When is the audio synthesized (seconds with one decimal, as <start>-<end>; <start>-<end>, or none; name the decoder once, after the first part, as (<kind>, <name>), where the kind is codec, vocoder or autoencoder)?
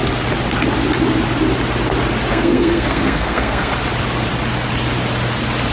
2.3-3.7 (codec, SNAC)